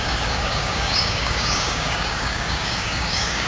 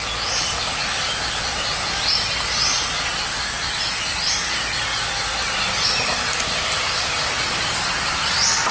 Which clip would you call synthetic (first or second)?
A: first